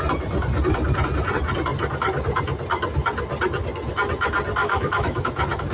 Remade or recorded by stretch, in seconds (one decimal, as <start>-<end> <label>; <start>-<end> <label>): 0.0-4.6 recorded; 4.6-5.2 remade; 5.2-5.7 recorded